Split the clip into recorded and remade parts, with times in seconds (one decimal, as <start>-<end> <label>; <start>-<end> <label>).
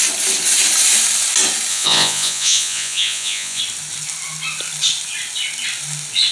0.0-1.7 recorded; 1.7-3.6 remade; 3.6-6.3 recorded